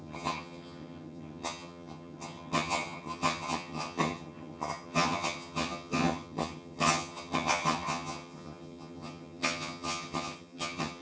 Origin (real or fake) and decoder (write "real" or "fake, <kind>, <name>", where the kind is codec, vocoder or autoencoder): fake, vocoder, HiFi-GAN